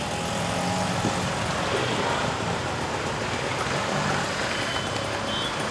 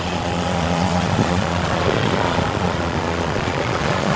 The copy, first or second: second